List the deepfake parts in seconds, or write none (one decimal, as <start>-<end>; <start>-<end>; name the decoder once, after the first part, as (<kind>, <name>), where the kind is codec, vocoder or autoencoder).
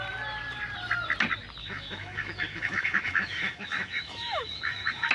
1.6-5.1 (autoencoder, DAC-VAE)